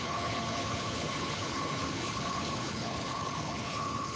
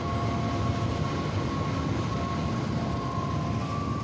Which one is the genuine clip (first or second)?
second